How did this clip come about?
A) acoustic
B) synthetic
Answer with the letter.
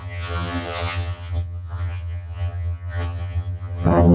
B